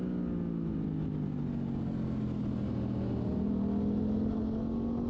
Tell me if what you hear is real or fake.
real